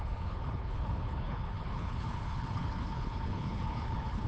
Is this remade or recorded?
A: remade